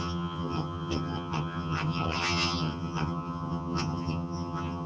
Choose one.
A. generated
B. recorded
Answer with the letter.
A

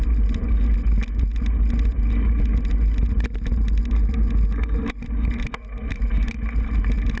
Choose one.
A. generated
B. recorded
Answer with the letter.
B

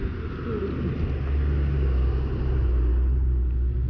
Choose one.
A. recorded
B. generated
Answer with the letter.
A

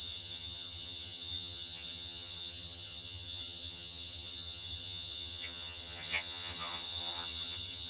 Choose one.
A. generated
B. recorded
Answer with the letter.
A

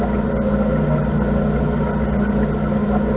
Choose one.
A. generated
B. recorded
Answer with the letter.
B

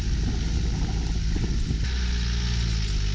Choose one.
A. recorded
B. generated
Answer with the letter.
A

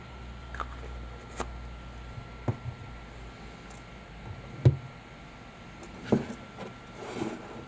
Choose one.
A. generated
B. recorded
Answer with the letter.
B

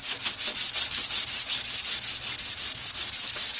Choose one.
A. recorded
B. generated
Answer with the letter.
A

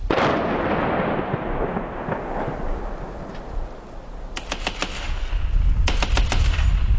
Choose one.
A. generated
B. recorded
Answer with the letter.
B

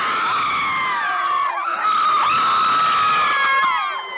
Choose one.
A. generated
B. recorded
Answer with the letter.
B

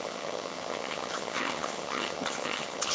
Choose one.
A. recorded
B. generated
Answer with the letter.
B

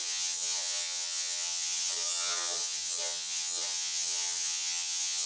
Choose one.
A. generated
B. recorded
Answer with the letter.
A